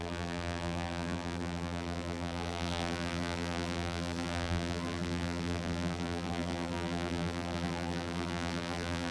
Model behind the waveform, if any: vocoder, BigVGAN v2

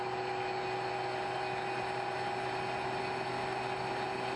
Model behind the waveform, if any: none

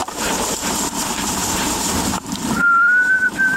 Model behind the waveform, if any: vocoder, BigVGAN v2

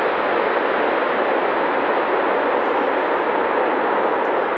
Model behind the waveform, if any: none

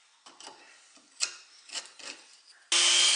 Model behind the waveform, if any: none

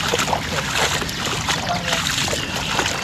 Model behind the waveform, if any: none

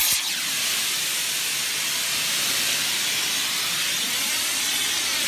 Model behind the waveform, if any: none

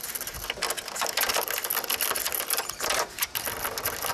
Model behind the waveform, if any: none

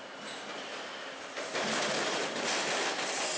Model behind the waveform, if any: none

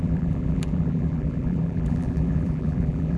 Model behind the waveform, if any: vocoder, BigVGAN v2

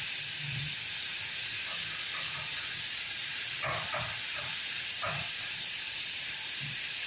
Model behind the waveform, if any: vocoder, BigVGAN v2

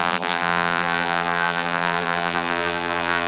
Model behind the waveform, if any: vocoder, BigVGAN v2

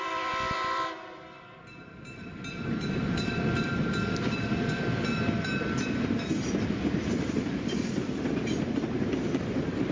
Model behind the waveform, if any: vocoder, BigVGAN v2